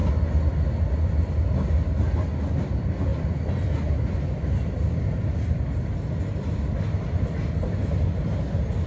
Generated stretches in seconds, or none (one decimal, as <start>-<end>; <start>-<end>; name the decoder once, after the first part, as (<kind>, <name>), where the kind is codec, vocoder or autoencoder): none